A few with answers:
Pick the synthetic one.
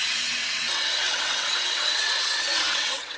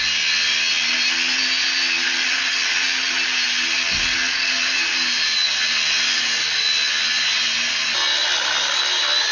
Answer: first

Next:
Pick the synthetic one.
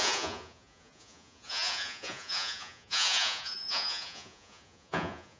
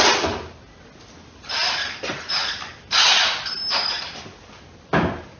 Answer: first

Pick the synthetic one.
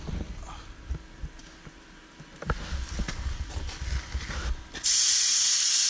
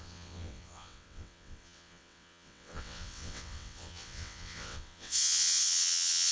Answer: second